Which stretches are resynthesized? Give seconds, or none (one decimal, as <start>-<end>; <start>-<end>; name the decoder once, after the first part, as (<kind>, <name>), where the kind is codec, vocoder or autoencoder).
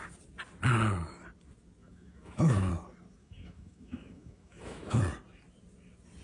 1.8-2.7 (autoencoder, DAC-VAE); 3.2-5.0